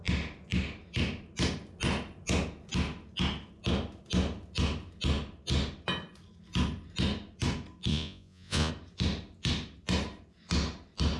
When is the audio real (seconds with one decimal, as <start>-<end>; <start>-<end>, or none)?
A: 0.0-7.9; 8.7-11.2